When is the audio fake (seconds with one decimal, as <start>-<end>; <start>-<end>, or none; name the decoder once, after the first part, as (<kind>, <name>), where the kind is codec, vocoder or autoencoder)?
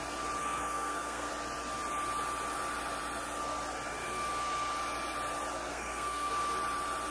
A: 0.4-1.3 (codec, SNAC); 5.7-6.3